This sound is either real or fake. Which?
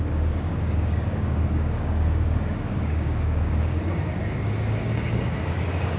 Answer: fake